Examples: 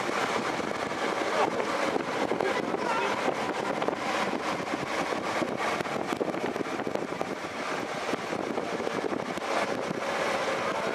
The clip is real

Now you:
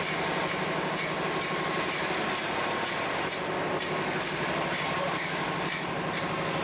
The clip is real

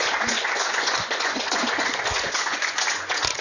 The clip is fake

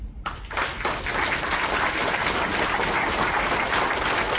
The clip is real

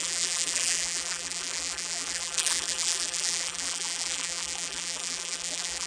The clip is fake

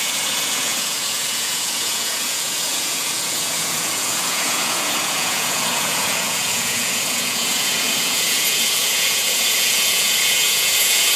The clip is fake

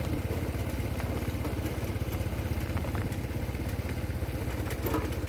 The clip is real